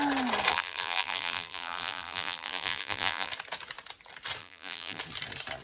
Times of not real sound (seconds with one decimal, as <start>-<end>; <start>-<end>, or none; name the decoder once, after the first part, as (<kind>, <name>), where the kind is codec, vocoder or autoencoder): 0.5-3.3 (vocoder, BigVGAN v2); 4.4-5.0